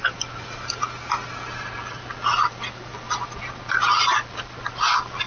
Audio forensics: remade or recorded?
recorded